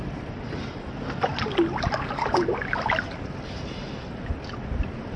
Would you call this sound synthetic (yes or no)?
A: no